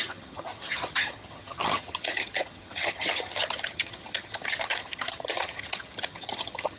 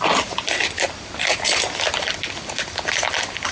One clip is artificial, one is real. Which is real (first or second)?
second